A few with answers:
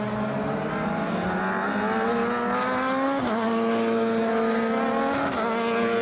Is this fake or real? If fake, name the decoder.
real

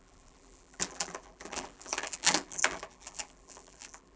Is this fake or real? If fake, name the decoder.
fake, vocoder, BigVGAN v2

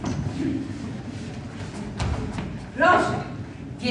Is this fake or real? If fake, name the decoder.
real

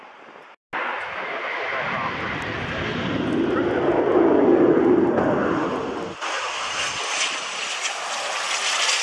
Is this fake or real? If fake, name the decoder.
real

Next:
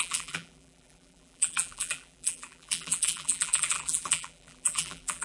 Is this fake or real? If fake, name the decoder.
fake, vocoder, BigVGAN v2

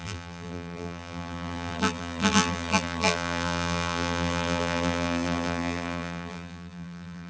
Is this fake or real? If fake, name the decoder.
fake, vocoder, BigVGAN v2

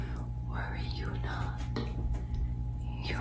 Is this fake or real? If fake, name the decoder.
real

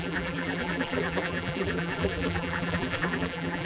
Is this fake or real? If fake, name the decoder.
fake, vocoder, BigVGAN v2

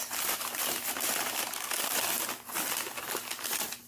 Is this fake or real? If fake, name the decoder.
real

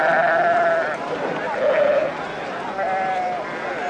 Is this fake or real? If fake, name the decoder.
fake, vocoder, BigVGAN v2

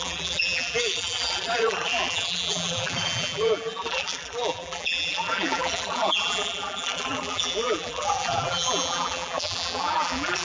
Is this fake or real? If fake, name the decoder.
fake, vocoder, BigVGAN v2